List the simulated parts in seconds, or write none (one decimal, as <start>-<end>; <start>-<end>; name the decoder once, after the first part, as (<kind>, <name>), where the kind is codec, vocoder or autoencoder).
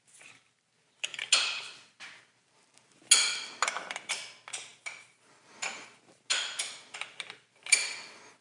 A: none